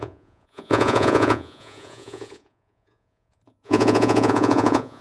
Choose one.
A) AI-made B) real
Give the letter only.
A